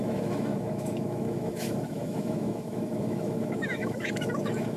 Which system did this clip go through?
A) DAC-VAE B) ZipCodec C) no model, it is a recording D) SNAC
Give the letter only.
A